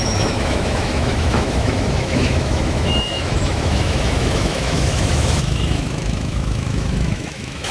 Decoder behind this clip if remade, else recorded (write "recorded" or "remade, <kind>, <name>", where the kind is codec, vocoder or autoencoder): remade, autoencoder, DAC-VAE